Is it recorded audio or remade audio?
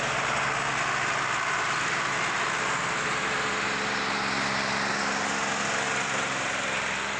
recorded